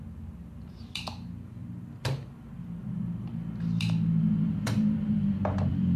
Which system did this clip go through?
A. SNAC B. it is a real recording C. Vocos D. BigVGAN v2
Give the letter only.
D